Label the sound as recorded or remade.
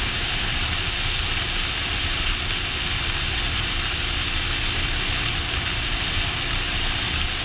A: recorded